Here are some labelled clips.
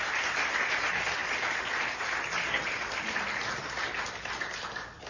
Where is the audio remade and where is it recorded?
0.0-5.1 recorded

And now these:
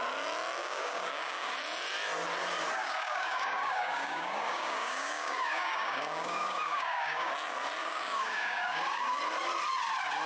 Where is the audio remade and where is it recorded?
0.0-0.6 recorded; 0.6-1.5 remade; 1.5-2.8 recorded; 2.8-7.3 remade; 7.3-7.8 recorded; 7.8-9.2 remade; 9.2-10.3 recorded

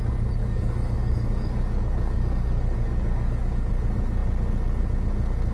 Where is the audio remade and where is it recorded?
0.0-0.4 recorded; 0.4-3.7 remade; 3.7-5.5 recorded

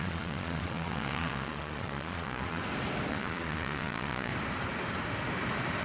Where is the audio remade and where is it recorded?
0.0-2.6 remade; 2.6-3.1 recorded; 3.1-4.3 remade; 4.3-5.8 recorded